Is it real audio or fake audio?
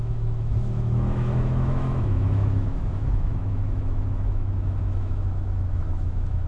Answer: fake